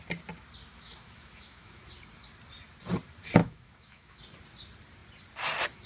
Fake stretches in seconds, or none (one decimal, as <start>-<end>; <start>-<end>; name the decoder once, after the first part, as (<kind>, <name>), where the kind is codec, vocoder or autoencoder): 0.7-1.8 (autoencoder, DAC-VAE); 3.4-4.2